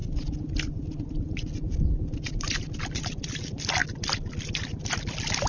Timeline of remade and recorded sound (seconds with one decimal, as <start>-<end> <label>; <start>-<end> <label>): 0.0-5.5 recorded